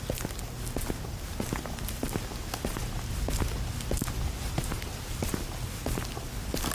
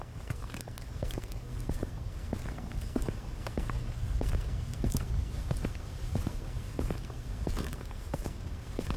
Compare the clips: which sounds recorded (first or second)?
first